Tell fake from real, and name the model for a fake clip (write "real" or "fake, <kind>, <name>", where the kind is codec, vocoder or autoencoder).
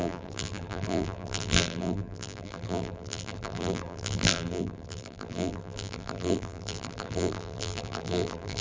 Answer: fake, vocoder, BigVGAN v2